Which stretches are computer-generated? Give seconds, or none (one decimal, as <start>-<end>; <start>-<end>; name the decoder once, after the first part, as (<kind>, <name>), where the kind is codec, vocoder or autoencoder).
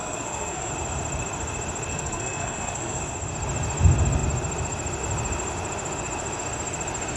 0.0-0.7 (codec, SNAC); 1.9-3.0